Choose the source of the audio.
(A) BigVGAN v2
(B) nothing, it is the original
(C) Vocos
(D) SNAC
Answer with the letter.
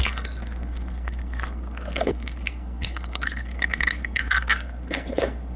D